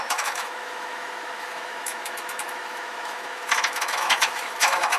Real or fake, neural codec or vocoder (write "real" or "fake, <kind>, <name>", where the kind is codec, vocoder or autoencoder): fake, autoencoder, DAC-VAE